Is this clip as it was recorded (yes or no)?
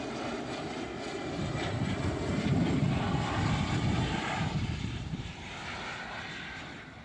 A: yes